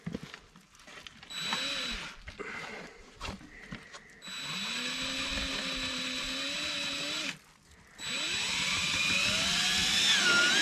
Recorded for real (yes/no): yes